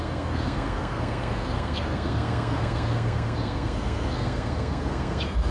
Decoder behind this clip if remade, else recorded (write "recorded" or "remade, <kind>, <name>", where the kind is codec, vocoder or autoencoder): remade, codec, SNAC